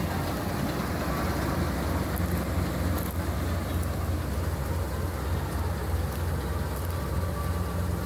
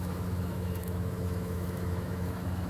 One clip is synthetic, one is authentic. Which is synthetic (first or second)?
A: second